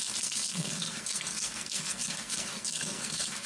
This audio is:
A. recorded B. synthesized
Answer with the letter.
B